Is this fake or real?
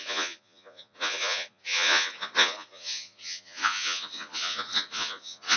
fake